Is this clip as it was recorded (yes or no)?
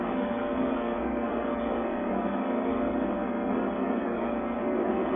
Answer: no